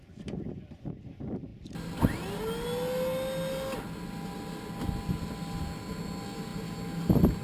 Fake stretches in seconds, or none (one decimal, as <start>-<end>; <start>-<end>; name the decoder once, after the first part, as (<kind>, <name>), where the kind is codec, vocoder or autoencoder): none